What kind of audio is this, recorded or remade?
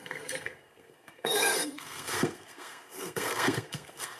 remade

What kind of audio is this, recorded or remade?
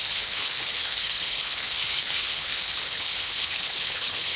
remade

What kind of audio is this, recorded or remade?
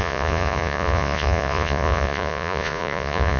remade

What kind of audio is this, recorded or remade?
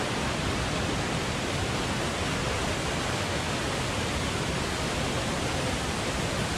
recorded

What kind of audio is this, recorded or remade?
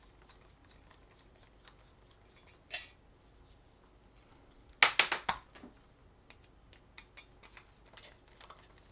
recorded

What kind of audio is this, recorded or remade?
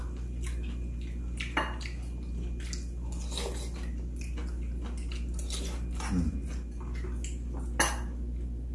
recorded